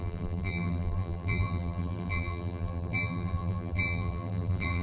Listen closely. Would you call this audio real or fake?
fake